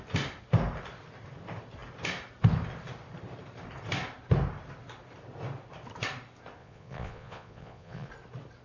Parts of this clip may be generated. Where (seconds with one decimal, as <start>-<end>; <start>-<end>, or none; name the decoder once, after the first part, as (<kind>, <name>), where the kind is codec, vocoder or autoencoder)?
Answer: 6.6-8.1 (vocoder, Vocos)